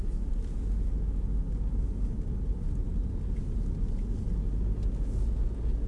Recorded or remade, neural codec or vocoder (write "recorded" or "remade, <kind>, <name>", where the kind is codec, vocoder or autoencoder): recorded